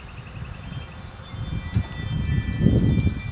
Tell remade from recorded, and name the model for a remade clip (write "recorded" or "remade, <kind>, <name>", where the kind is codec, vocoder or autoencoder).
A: recorded